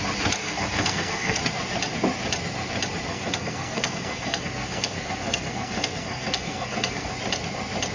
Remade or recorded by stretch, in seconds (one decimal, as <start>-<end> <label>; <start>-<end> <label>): 0.0-0.4 recorded; 0.4-1.4 remade; 1.4-3.1 recorded; 3.1-7.1 remade; 7.1-7.9 recorded